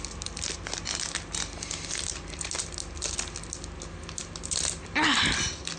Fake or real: real